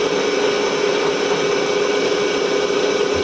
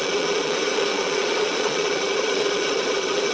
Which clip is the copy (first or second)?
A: second